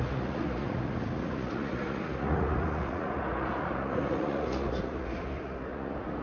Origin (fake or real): fake